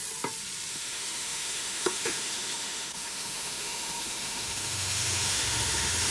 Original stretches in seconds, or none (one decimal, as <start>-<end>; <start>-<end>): 0.0-0.7